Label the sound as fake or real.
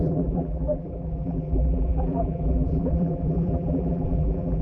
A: fake